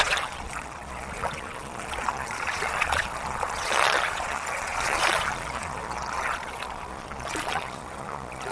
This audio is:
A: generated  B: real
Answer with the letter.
A